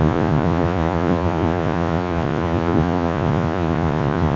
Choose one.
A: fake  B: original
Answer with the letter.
A